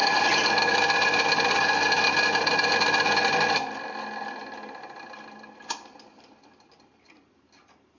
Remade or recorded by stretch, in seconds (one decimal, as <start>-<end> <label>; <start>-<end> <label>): 0.0-8.0 recorded